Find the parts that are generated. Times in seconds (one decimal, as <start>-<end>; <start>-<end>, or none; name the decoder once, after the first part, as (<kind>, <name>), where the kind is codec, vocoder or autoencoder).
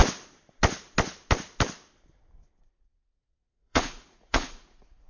2.6-5.1 (vocoder, Vocos)